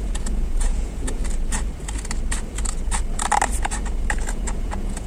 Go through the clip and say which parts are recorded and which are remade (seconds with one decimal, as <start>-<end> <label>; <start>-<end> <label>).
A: 0.0-1.2 remade; 1.2-4.3 recorded; 4.3-5.1 remade